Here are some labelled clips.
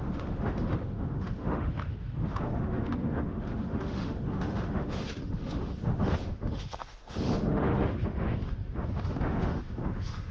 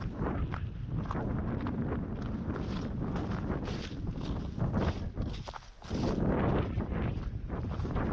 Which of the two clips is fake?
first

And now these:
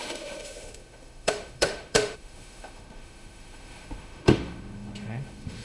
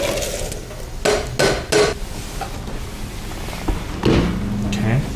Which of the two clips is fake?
first